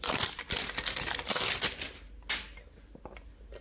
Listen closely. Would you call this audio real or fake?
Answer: real